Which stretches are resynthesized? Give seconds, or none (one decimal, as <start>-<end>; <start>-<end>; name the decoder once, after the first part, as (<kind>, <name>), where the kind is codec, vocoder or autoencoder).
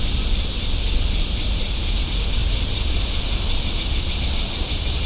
none